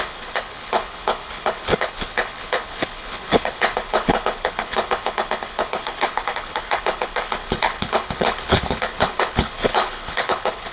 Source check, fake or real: fake